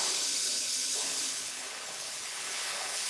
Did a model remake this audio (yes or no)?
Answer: yes